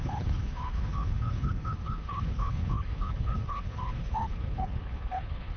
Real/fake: fake